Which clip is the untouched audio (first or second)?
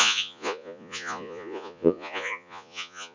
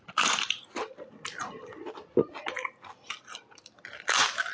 second